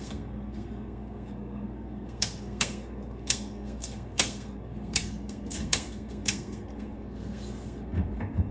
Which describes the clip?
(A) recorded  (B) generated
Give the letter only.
B